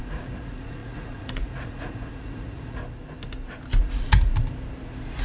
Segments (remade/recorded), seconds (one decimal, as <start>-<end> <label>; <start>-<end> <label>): 0.0-2.8 remade; 2.8-3.8 recorded; 3.8-4.3 remade; 4.3-5.2 recorded